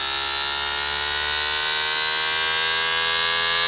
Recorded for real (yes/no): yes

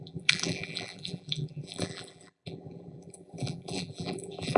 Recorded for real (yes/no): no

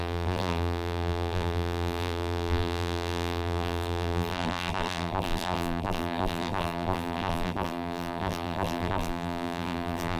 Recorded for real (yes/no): no